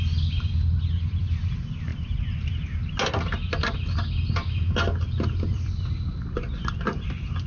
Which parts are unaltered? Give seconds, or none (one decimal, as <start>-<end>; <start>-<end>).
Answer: 0.0-7.5